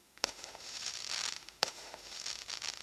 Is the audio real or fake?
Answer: fake